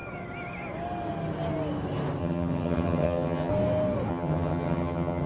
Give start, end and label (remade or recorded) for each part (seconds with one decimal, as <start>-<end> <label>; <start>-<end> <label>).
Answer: 0.0-2.2 recorded; 2.2-3.5 remade; 3.5-4.1 recorded; 4.1-5.3 remade